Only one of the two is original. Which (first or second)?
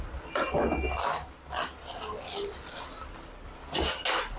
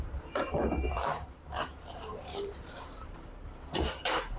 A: first